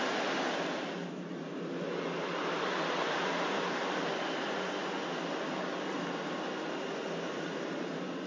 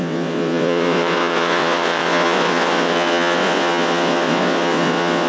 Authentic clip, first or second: first